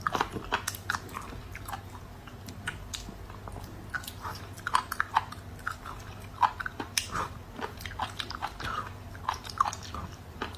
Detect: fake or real real